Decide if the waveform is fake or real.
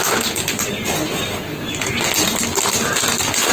real